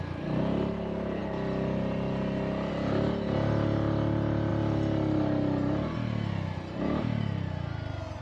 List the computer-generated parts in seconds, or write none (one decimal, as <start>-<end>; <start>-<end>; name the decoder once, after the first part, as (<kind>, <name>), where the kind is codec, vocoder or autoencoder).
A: none